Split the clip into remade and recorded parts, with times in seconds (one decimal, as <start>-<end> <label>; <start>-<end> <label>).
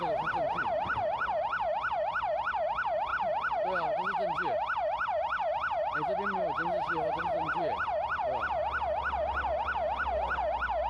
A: 0.0-10.9 recorded